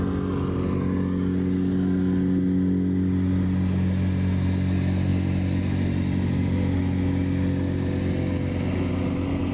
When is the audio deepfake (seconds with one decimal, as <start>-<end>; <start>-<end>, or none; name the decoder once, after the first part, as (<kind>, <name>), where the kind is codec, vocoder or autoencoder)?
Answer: none